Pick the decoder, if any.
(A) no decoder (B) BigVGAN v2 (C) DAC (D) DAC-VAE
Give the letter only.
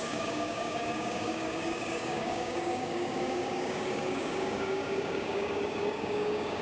C